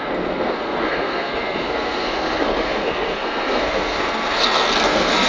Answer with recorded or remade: remade